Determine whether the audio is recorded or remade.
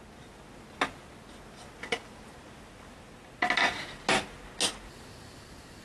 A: recorded